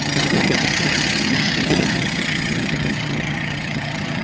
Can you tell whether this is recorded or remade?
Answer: remade